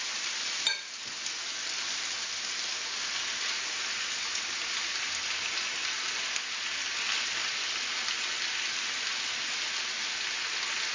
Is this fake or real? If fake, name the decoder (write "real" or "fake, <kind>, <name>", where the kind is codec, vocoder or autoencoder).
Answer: real